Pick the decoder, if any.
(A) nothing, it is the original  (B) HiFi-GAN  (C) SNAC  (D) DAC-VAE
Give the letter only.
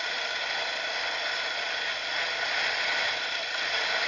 A